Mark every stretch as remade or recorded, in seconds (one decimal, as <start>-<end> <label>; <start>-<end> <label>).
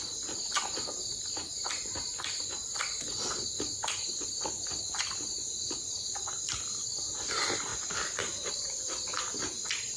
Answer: 0.0-10.0 recorded